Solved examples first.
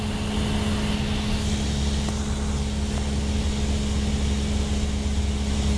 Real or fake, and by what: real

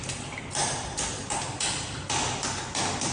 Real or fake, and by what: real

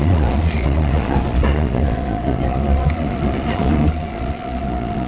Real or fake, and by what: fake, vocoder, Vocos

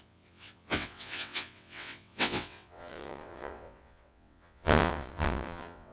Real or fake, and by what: fake, vocoder, WaveNeXt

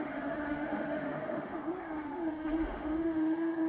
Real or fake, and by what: fake, autoencoder, DAC-VAE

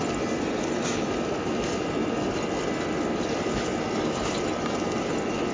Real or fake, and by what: real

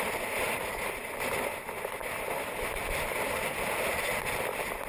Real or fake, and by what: real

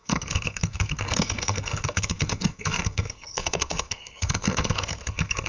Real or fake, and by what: fake, codec, SNAC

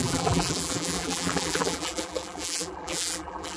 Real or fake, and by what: fake, vocoder, BigVGAN v2